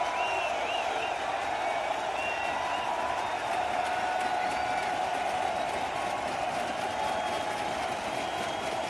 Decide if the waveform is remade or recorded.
recorded